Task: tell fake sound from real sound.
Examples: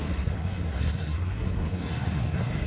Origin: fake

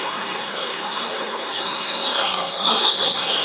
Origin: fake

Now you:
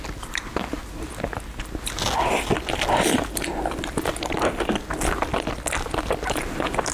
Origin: real